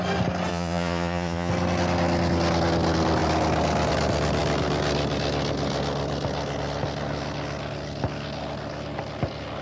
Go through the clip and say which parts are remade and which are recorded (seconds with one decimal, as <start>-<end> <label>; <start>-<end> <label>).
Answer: 0.0-0.5 recorded; 0.5-1.5 remade; 1.5-9.6 recorded